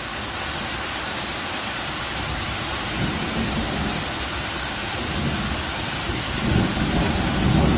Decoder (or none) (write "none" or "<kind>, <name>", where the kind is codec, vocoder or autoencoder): none